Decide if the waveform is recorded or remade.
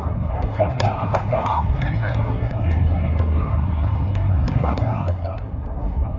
remade